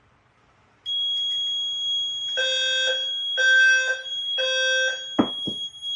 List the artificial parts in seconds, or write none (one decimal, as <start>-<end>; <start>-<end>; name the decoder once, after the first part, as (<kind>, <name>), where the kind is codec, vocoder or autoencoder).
none